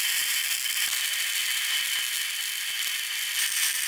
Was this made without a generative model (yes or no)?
yes